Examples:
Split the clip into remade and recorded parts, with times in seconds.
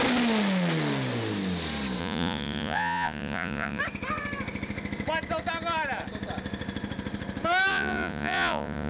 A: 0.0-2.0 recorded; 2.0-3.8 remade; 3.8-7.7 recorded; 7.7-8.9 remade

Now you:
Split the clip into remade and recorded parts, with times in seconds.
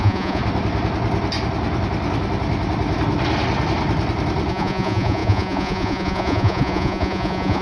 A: 0.0-0.4 remade; 0.4-4.5 recorded; 4.5-7.6 remade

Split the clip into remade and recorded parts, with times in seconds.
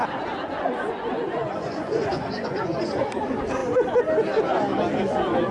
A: 0.0-0.4 recorded; 0.4-2.8 remade; 2.8-5.5 recorded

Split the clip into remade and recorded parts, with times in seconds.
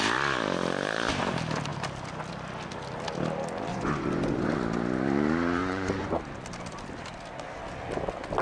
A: 0.0-3.7 recorded; 3.7-4.5 remade; 4.5-5.6 recorded; 5.6-6.2 remade; 6.2-8.4 recorded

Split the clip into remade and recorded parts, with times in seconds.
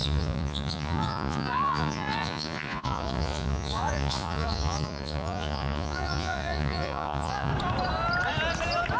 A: 0.0-7.5 remade; 7.5-9.0 recorded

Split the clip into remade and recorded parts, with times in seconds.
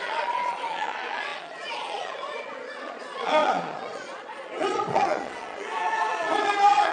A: 0.0-6.9 remade